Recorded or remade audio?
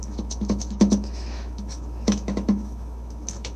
remade